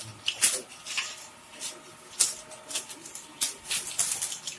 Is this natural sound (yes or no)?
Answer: yes